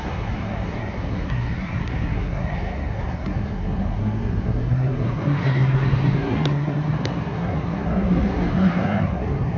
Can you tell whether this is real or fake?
fake